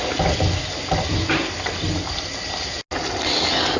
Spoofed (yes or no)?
no